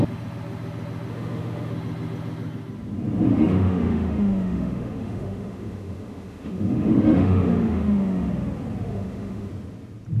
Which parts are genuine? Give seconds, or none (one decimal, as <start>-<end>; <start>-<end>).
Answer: 0.0-1.1; 1.7-3.3; 8.3-8.9; 9.5-10.2